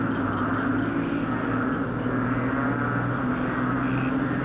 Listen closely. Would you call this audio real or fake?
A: real